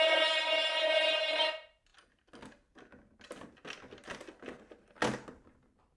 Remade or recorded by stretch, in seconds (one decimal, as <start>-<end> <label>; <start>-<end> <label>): 0.0-6.0 recorded